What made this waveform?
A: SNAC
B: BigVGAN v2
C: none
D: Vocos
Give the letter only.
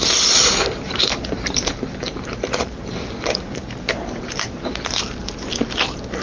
B